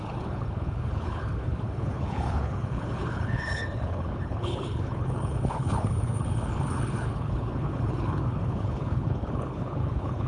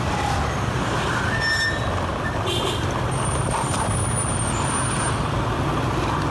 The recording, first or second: second